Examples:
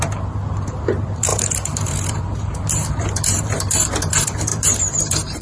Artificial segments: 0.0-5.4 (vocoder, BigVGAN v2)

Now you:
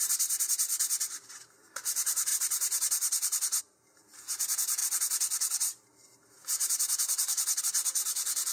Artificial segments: 0.0-8.5 (vocoder, BigVGAN v2)

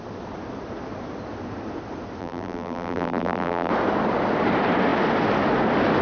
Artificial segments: 2.2-3.7 (vocoder, BigVGAN v2)